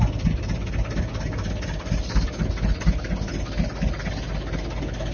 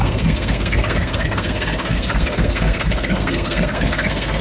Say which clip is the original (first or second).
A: first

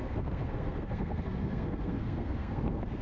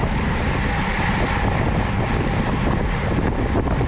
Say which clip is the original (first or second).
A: second